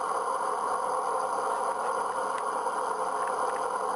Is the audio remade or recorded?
recorded